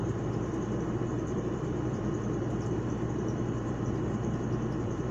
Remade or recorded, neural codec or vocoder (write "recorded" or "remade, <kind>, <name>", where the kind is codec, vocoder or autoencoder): remade, vocoder, BigVGAN v2